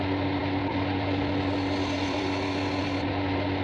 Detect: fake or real fake